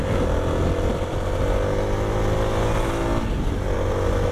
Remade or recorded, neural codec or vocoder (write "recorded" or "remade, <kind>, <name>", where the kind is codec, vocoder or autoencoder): recorded